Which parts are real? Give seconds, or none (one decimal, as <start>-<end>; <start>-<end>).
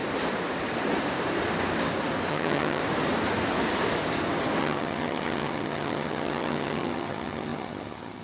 0.0-2.3; 2.8-4.6